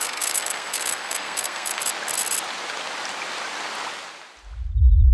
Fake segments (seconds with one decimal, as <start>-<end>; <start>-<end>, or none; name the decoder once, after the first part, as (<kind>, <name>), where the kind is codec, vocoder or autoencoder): 0.0-1.8 (codec, SNAC)